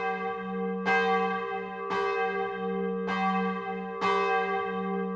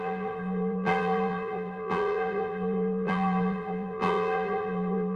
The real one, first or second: first